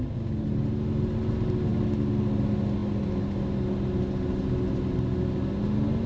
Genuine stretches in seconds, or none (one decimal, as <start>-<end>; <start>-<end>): 0.0-6.1